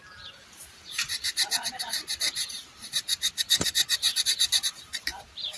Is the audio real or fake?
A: fake